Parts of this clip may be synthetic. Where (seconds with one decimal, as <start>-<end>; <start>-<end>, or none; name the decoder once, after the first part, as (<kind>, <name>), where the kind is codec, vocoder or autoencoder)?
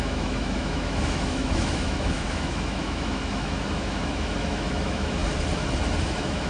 0.0-5.2 (autoencoder, DAC-VAE); 6.0-6.5